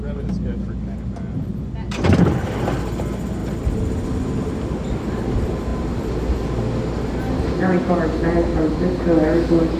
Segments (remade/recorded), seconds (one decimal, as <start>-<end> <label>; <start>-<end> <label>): 0.0-9.8 recorded